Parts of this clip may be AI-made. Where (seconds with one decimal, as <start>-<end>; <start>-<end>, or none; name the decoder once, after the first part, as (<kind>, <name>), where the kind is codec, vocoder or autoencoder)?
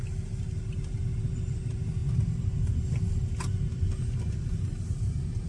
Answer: none